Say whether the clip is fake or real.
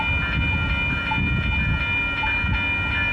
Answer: real